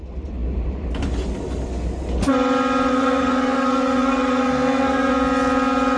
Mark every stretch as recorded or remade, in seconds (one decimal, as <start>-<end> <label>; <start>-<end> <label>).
0.0-2.9 recorded; 2.9-5.1 remade; 5.1-6.0 recorded